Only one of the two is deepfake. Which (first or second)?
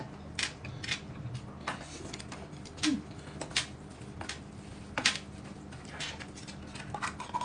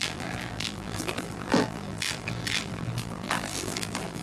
second